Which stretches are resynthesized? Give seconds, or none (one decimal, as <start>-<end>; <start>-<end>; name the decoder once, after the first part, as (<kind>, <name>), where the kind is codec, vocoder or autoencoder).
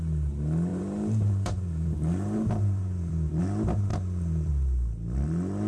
0.7-3.4 (vocoder, BigVGAN v2); 3.9-4.5